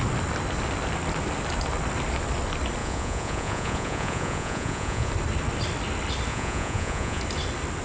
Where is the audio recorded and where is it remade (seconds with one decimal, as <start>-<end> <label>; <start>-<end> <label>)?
0.0-2.8 recorded; 2.8-5.1 remade; 5.1-6.3 recorded; 6.3-7.2 remade; 7.2-7.8 recorded